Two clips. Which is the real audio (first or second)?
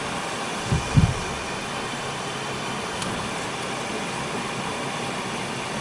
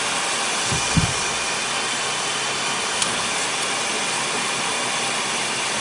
second